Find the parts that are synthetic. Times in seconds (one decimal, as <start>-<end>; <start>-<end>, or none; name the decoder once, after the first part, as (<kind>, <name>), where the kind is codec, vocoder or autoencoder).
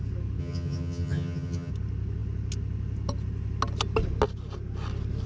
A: 0.4-1.7 (vocoder, HiFi-GAN)